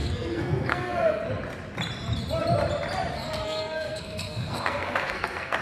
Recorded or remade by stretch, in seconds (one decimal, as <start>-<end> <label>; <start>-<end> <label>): 0.0-1.3 remade; 1.3-3.1 recorded; 3.1-5.6 remade